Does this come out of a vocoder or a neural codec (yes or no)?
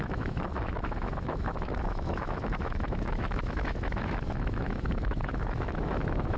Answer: yes